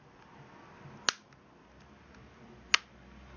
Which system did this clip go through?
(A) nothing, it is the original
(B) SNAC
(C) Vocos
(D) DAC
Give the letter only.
A